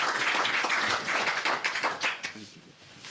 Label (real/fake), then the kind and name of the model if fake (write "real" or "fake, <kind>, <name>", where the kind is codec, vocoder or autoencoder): fake, vocoder, Vocos